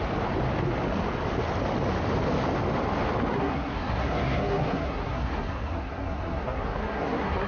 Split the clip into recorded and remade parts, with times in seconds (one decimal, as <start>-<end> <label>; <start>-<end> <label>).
0.0-3.3 recorded; 3.3-7.5 remade